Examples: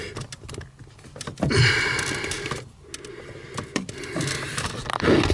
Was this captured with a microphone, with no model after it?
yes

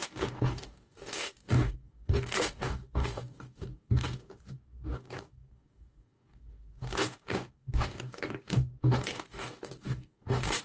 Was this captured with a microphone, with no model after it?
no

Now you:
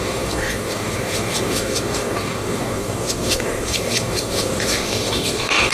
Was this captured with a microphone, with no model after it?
no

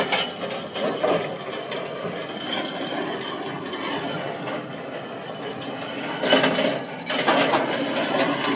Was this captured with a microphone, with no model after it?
yes